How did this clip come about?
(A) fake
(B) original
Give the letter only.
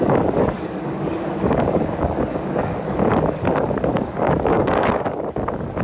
A